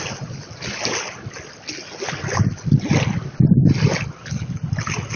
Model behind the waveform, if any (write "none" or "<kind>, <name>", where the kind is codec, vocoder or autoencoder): none